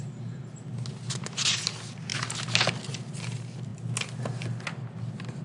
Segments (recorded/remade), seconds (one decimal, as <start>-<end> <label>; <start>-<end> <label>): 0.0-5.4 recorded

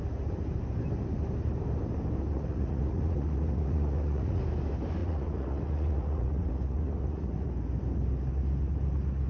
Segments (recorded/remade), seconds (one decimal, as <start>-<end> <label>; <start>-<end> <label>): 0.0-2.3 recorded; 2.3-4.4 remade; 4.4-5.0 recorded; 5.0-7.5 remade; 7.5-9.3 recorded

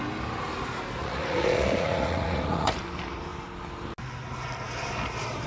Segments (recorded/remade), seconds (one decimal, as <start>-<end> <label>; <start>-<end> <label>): 0.0-1.0 recorded; 1.0-2.8 remade; 2.8-5.5 recorded